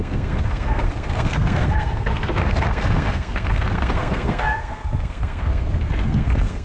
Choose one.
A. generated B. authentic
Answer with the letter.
A